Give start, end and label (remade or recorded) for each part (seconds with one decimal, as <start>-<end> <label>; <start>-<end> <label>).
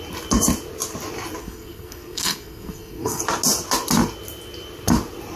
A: 0.0-1.4 recorded; 1.4-3.2 remade; 3.2-5.4 recorded